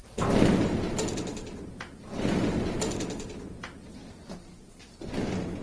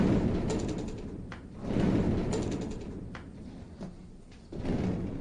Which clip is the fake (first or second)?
second